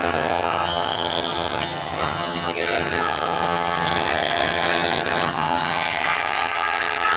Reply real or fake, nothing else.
fake